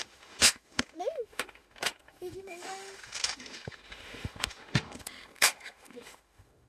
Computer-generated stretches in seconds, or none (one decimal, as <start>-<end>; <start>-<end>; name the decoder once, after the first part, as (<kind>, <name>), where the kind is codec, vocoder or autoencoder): 0.0-6.7 (autoencoder, DAC-VAE)